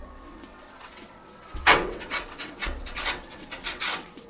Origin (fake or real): fake